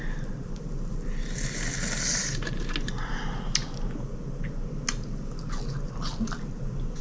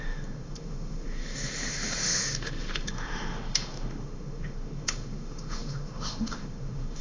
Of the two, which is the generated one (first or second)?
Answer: second